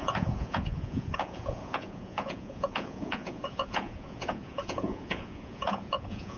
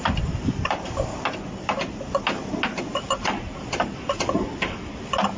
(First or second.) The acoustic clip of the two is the second